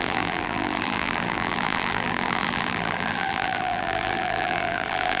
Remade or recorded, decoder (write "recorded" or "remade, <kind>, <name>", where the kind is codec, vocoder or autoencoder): remade, vocoder, BigVGAN v2